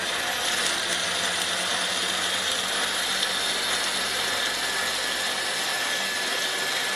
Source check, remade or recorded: recorded